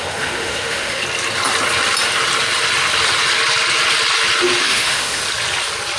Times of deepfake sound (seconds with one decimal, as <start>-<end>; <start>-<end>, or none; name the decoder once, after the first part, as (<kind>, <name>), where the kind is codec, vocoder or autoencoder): 0.0-1.0 (autoencoder, DAC-VAE); 4.6-5.2